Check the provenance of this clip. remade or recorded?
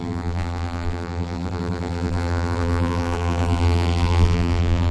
remade